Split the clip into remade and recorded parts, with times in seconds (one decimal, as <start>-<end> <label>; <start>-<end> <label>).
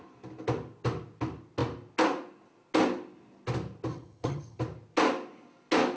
0.0-3.9 recorded; 3.9-4.6 remade; 4.6-6.0 recorded